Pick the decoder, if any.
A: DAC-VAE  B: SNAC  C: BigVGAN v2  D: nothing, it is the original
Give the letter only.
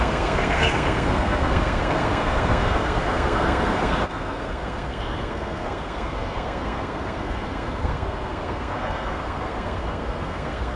B